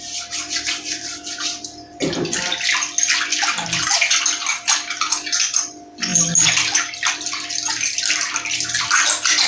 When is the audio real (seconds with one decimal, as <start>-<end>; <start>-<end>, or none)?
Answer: 0.0-9.5